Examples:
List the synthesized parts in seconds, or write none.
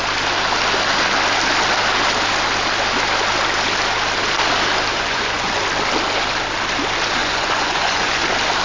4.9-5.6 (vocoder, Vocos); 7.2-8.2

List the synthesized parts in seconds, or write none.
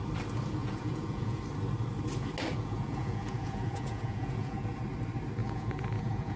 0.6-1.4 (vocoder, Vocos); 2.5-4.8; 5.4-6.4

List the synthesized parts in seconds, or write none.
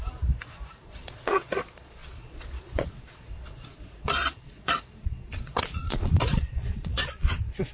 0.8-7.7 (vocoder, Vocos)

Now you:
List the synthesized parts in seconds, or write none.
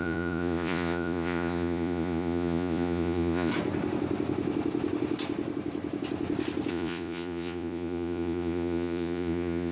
0.0-3.5 (vocoder, Vocos); 6.7-9.7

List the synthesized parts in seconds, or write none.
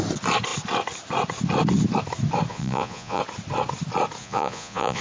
2.5-3.2 (vocoder, Vocos); 4.2-5.0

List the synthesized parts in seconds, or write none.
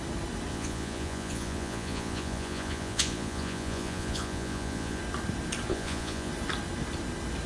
0.5-5.0 (vocoder, Vocos); 5.7-6.3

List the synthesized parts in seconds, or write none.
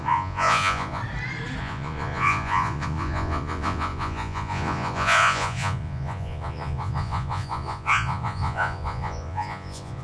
0.0-1.0 (vocoder, Vocos); 1.6-10.0